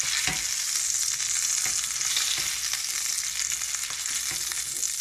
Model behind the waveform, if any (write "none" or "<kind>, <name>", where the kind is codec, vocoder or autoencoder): none